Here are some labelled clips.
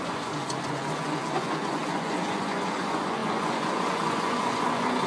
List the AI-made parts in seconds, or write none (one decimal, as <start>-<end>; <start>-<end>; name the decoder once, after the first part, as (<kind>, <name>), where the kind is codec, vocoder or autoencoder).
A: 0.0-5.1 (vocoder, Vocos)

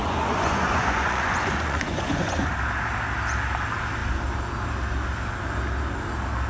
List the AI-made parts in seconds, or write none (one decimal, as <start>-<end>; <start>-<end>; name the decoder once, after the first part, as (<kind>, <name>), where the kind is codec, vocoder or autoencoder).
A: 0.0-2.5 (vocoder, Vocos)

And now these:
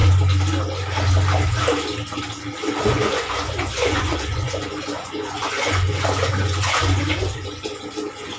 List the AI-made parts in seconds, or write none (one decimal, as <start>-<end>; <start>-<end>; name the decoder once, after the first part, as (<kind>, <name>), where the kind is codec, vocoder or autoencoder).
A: 2.8-8.4 (vocoder, Vocos)

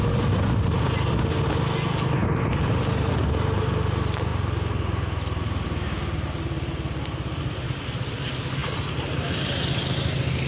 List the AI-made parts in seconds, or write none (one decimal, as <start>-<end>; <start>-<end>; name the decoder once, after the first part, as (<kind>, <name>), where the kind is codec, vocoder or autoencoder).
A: none

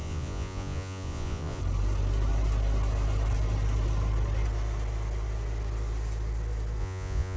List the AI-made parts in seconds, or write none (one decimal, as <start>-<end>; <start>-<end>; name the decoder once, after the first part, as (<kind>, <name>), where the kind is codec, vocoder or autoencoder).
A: 0.0-1.6 (vocoder, Vocos); 6.8-7.4